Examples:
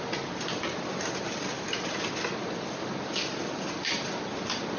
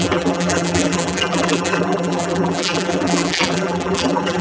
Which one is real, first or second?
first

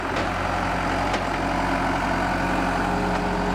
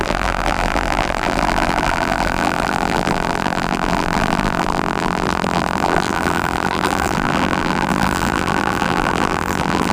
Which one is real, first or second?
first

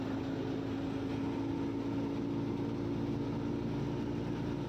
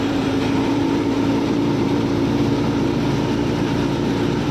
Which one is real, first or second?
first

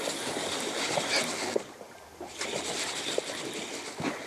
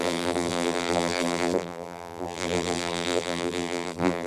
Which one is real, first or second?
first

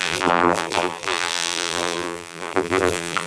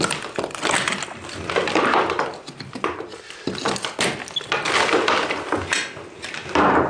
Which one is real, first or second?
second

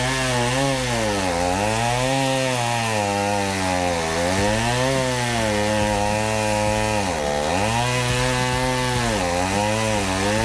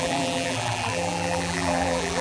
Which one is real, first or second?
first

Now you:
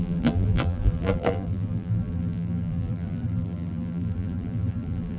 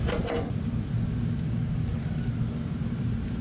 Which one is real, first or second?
second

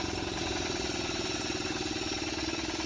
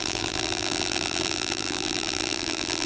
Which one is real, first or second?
first